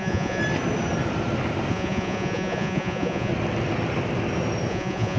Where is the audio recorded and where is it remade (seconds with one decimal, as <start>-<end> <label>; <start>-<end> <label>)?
0.0-0.4 remade; 0.4-1.7 recorded; 1.7-3.3 remade; 3.3-4.7 recorded; 4.7-5.2 remade